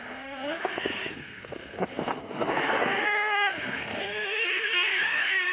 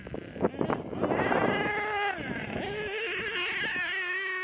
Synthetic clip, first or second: first